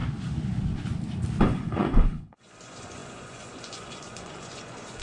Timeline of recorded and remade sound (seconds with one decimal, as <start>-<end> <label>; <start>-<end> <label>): 0.0-1.4 recorded; 1.4-5.0 remade